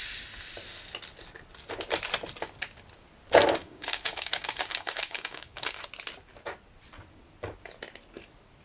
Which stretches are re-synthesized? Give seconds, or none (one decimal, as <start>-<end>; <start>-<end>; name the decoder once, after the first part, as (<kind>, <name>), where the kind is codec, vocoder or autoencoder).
3.6-5.7 (codec, DAC)